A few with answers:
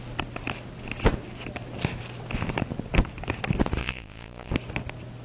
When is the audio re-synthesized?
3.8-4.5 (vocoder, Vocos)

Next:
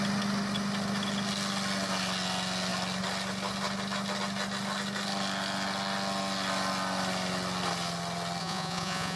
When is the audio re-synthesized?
8.4-9.2 (vocoder, Vocos)

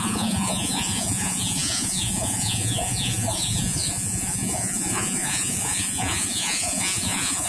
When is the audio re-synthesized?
0.0-7.5 (vocoder, Vocos)

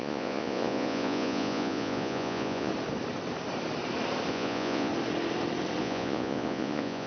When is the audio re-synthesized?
0.0-2.7 (vocoder, Vocos); 4.3-4.9; 5.8-7.1